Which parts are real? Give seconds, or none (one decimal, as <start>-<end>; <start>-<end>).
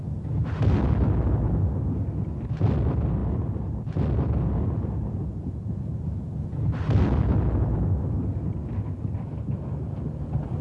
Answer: 0.0-10.6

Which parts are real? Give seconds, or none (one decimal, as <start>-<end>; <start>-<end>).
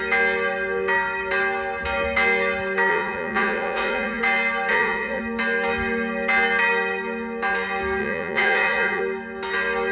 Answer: 0.0-2.9; 4.2-4.7; 5.2-8.0; 9.0-9.9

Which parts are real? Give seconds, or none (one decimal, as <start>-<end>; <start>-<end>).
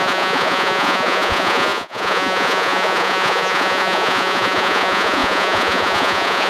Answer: none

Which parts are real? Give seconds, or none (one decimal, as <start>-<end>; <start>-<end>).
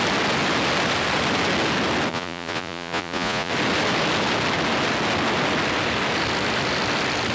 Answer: 0.0-2.1; 3.5-7.3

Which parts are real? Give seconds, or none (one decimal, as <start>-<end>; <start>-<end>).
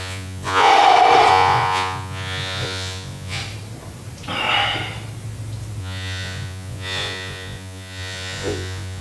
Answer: 0.7-1.3; 3.4-5.8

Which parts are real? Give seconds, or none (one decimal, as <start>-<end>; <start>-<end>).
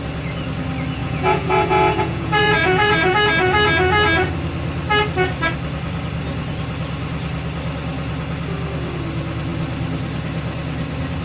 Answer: 0.0-1.0; 3.1-11.2